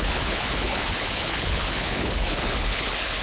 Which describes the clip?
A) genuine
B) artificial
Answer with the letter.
B